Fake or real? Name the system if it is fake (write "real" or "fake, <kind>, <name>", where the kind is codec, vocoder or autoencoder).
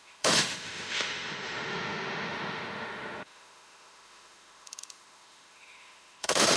fake, autoencoder, DAC-VAE